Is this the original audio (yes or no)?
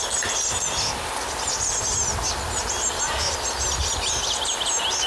yes